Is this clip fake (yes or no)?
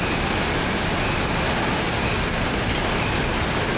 no